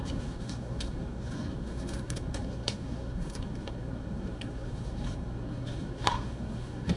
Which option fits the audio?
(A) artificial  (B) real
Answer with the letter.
A